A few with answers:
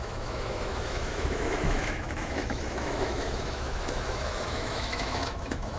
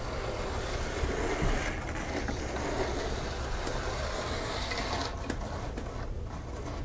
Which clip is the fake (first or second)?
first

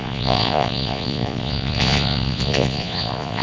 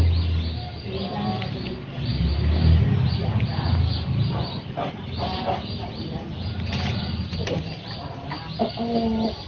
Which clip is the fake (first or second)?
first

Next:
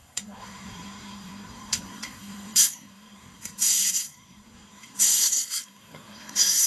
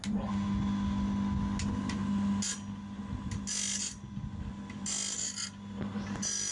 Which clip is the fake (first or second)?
first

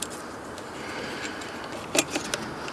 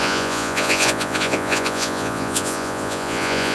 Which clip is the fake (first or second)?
second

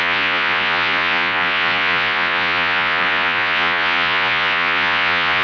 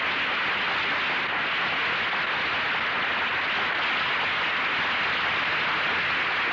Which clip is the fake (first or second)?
first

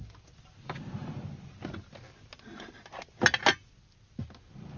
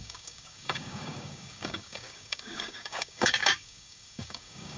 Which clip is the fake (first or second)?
second